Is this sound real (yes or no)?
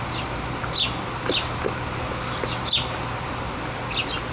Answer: yes